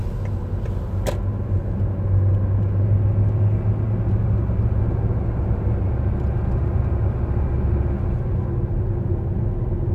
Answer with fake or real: real